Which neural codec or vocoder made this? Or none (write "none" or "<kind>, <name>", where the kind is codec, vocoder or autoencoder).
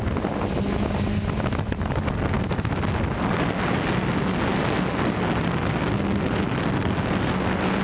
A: none